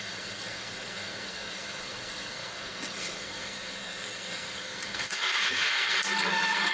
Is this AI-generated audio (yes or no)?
yes